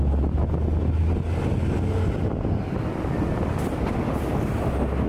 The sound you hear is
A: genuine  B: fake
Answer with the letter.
A